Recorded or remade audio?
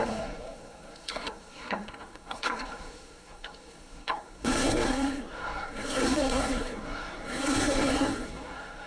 remade